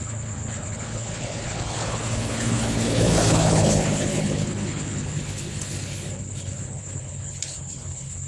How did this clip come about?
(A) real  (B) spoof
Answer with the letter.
B